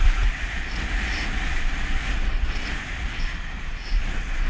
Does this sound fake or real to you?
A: real